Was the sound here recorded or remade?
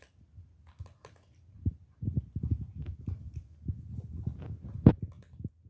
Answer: recorded